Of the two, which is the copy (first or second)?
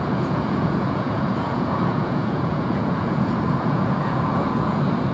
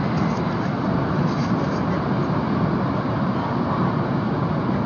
first